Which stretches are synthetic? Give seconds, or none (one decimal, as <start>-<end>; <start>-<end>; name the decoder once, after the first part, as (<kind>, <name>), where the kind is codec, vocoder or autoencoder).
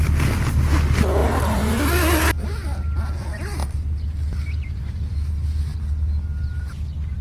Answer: 1.2-1.8 (vocoder, BigVGAN v2)